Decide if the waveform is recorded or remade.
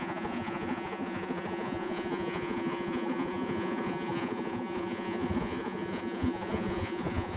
remade